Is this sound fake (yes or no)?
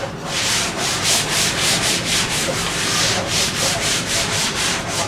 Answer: yes